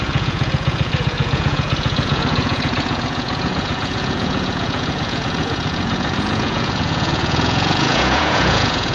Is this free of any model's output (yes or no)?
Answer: no